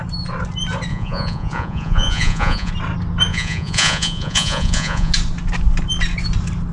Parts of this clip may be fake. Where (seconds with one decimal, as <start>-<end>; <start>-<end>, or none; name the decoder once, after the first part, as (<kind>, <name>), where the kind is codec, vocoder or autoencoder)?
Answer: 0.9-2.7 (vocoder, Vocos); 3.3-5.1